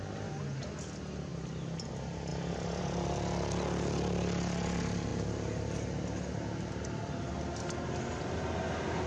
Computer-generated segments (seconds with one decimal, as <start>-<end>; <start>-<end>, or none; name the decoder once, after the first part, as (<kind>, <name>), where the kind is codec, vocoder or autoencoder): 1.3-1.9 (vocoder, BigVGAN v2)